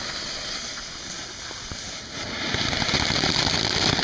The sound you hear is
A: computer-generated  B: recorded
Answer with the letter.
B